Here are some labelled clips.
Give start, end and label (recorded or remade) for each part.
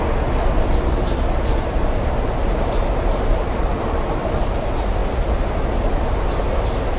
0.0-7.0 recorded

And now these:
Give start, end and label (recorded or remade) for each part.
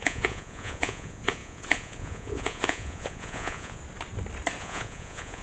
0.0-3.8 remade; 3.8-4.6 recorded; 4.6-5.4 remade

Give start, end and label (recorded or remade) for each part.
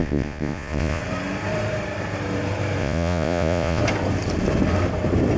0.0-1.0 remade; 1.0-2.8 recorded; 2.8-3.8 remade; 3.8-5.4 recorded